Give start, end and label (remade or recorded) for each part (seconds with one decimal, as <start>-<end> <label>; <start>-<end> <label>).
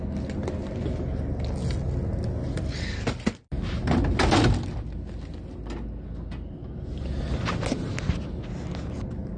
0.0-9.4 recorded